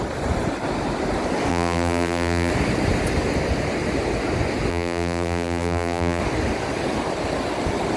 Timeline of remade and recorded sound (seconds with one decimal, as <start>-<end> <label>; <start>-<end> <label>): 0.0-1.5 recorded; 1.5-2.5 remade; 2.5-4.7 recorded; 4.7-6.2 remade; 6.2-8.0 recorded